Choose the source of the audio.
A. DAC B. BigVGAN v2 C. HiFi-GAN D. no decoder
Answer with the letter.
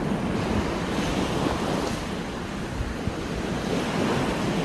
D